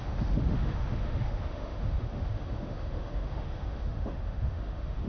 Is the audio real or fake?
fake